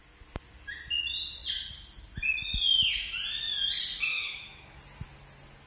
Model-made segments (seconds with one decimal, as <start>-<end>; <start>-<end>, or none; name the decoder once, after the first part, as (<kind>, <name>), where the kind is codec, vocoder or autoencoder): 4.1-4.8 (autoencoder, DAC-VAE)